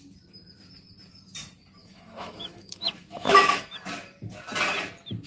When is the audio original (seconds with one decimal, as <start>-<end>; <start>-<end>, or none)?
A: 0.0-1.8; 3.6-5.3